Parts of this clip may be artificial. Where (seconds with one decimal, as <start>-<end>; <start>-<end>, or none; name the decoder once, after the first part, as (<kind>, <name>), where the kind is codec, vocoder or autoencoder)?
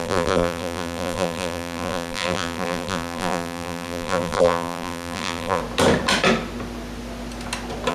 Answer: 0.0-5.6 (vocoder, BigVGAN v2)